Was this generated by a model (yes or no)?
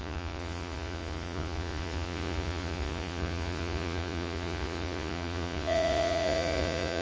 yes